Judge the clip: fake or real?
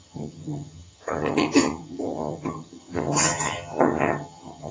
fake